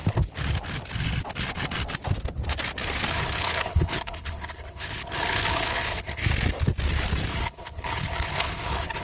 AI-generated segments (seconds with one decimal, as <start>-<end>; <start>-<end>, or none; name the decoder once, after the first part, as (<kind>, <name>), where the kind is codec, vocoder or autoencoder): 3.1-6.2 (codec, HILCodec); 7.3-9.0